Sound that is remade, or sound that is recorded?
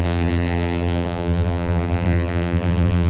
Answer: remade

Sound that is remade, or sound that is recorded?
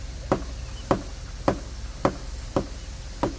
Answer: recorded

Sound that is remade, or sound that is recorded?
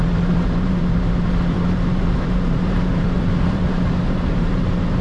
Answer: remade